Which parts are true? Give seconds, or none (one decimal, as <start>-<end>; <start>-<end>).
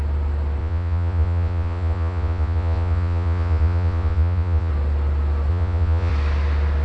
0.0-0.6; 4.7-5.5; 6.1-6.8